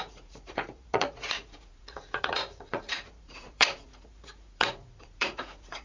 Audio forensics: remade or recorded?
remade